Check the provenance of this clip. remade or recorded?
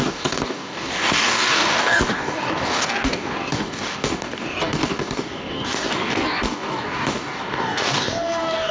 remade